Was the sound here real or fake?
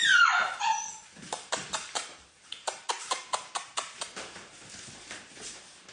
fake